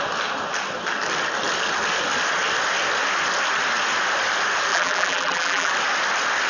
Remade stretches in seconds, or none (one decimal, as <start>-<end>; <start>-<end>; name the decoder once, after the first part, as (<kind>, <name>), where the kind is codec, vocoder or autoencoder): 4.7-5.7 (vocoder, BigVGAN v2)